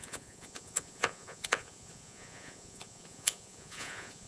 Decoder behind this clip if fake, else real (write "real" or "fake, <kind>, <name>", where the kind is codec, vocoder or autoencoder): fake, vocoder, Vocos